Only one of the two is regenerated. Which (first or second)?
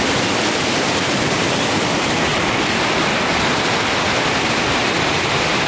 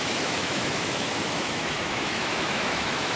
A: second